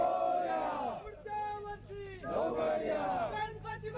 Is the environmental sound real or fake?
real